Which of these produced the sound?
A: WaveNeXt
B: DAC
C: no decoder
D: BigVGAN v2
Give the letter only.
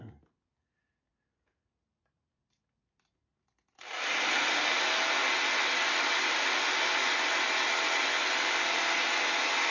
C